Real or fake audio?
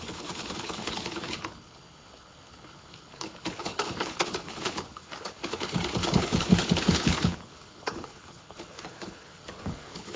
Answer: fake